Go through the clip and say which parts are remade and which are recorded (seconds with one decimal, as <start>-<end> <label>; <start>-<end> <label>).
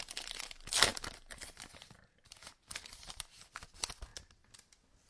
0.0-5.1 recorded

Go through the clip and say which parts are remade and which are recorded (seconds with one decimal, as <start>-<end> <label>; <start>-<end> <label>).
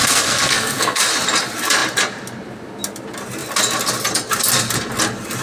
0.0-1.0 remade; 1.0-5.4 recorded